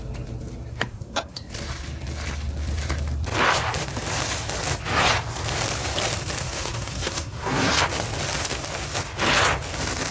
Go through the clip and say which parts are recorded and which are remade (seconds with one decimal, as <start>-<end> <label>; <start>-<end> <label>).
0.0-0.7 recorded; 0.7-1.5 remade; 1.5-6.4 recorded; 6.4-7.7 remade; 7.7-10.1 recorded